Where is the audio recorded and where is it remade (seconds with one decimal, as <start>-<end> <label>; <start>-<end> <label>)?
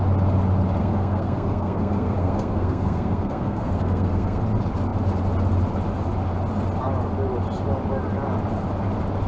0.0-0.8 recorded; 0.8-4.4 remade; 4.4-9.3 recorded